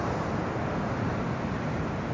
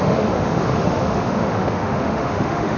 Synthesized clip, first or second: second